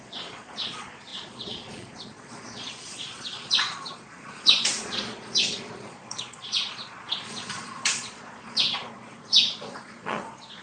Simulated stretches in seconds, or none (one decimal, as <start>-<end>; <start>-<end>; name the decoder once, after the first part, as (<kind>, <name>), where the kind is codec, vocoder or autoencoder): 0.0-10.6 (vocoder, Vocos)